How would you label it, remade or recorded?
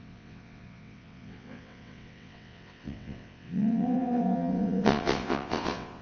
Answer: remade